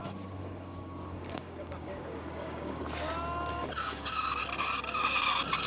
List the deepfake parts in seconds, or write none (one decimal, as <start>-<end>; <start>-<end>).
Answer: 0.0-2.8; 3.5-4.4